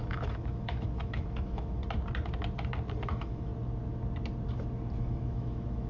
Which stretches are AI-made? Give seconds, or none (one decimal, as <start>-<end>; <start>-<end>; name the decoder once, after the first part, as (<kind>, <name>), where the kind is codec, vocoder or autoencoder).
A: 0.0-1.8 (autoencoder, DAC-VAE); 2.9-3.5; 5.0-5.9

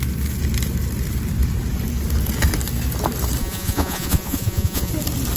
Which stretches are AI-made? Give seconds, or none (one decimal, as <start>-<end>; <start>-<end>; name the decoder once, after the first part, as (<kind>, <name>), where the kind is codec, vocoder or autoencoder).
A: 3.4-4.9 (vocoder, Vocos)

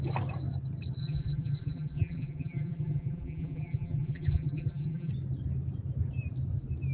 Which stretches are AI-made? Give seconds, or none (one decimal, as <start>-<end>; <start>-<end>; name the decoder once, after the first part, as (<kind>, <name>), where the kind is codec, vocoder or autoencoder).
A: 1.0-5.1 (vocoder, BigVGAN v2)

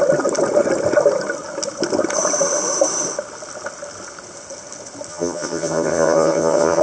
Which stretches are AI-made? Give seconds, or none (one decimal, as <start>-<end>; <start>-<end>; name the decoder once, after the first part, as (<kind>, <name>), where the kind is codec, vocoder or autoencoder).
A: 5.1-6.8 (vocoder, HiFi-GAN)

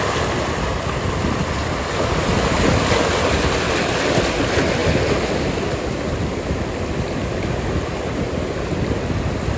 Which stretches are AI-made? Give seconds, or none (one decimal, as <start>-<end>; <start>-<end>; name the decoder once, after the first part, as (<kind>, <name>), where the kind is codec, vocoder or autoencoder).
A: none

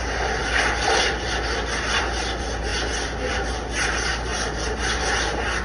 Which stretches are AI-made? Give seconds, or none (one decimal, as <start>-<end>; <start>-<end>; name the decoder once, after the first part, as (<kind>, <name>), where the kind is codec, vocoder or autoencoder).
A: none

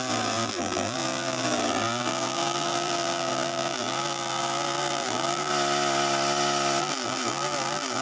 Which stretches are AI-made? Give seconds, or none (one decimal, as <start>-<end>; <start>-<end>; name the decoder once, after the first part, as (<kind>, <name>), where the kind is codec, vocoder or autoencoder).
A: 0.0-5.5 (vocoder, BigVGAN v2); 6.8-8.0